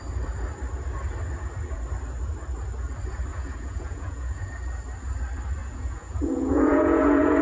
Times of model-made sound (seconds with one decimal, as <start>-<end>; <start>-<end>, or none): 3.3-4.5; 5.6-7.4

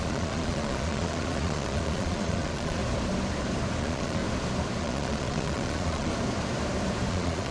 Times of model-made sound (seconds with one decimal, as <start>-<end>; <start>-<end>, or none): 0.0-2.8; 3.8-4.2; 4.8-6.1; 7.1-7.5

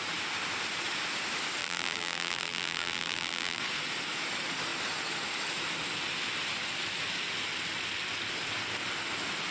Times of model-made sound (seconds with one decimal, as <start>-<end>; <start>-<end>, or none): 1.6-3.6

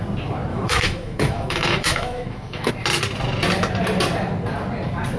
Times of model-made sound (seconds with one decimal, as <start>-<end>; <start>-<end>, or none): 0.5-2.7

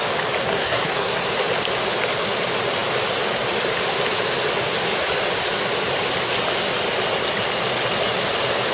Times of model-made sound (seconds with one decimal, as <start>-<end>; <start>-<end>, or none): 0.4-1.3

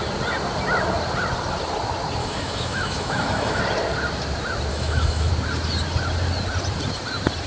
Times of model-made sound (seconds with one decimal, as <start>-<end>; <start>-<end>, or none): 2.2-3.6; 4.7-5.3

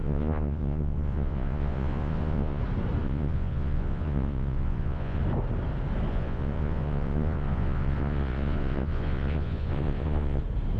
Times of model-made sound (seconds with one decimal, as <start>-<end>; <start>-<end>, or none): 0.0-2.6; 3.0-5.2; 6.1-10.4